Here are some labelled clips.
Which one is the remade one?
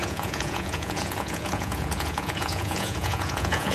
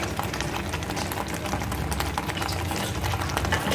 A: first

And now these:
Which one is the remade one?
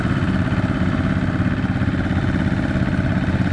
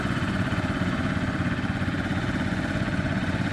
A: second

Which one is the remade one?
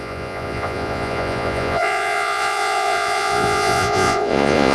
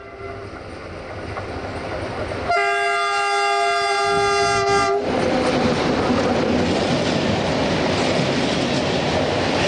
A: first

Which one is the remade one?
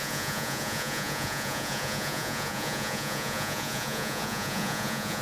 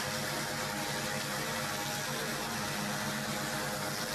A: first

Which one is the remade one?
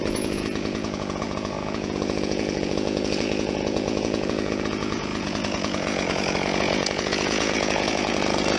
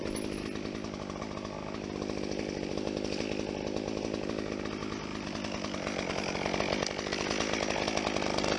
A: first